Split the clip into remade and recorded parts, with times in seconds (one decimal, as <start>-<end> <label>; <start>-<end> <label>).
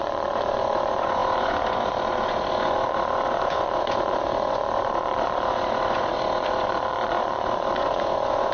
0.0-8.5 remade